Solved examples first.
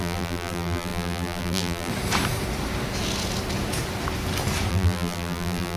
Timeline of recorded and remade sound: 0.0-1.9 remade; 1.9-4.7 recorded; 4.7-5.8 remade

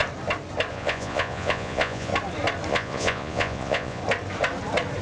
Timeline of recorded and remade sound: 0.0-0.7 recorded; 0.7-2.1 remade; 2.1-2.7 recorded; 2.7-4.0 remade; 4.0-5.0 recorded